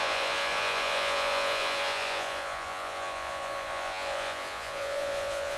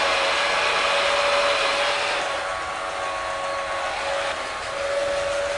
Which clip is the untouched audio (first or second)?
second